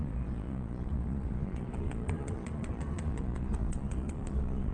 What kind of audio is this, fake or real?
fake